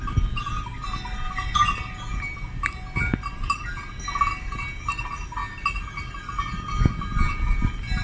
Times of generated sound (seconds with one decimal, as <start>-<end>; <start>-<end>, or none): none